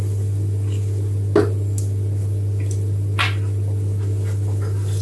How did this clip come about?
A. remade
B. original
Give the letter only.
B